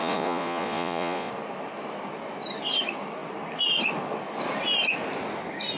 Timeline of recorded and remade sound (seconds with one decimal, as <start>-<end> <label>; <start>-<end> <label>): 0.0-1.3 remade; 1.3-5.8 recorded